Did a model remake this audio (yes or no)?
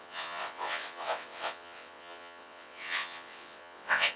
yes